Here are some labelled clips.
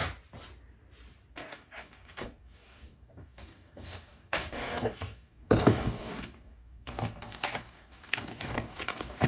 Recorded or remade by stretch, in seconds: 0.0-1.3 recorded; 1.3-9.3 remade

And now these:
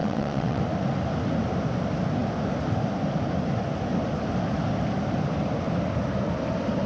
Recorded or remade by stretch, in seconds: 0.0-0.6 remade; 0.6-6.9 recorded